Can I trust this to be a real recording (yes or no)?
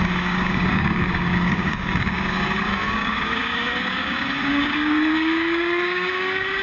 no